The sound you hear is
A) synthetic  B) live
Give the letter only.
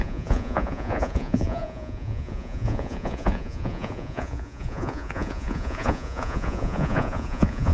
A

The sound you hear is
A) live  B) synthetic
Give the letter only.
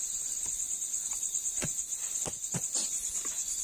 A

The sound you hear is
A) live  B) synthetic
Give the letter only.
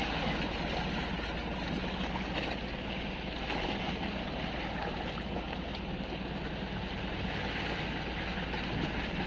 A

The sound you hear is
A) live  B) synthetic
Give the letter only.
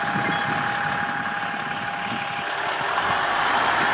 A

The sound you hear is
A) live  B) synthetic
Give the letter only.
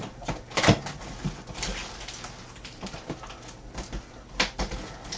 A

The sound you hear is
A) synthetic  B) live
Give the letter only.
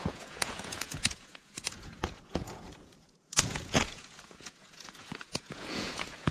A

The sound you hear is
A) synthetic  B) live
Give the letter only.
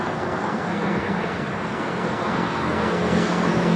A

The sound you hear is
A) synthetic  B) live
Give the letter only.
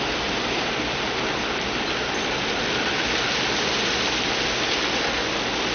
B